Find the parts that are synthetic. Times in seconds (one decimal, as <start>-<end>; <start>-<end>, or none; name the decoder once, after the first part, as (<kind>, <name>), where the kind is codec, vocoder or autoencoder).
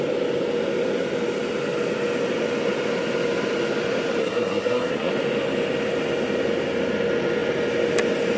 4.2-5.1 (codec, SNAC)